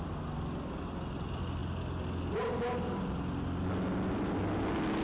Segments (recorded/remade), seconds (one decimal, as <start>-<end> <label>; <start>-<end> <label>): 0.0-5.0 recorded